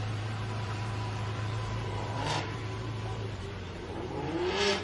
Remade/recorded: remade